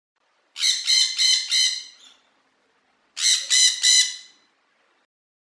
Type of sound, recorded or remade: remade